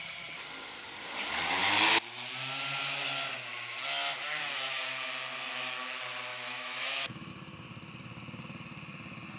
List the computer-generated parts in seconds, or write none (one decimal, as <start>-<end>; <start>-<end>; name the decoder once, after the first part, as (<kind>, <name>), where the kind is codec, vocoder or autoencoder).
6.3-7.3 (autoencoder, DAC-VAE)